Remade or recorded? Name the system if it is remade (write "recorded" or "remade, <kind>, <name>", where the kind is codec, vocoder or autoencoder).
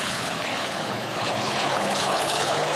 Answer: remade, codec, HILCodec